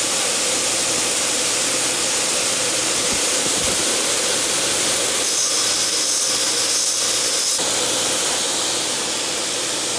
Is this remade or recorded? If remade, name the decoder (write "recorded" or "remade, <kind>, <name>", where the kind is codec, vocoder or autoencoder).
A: recorded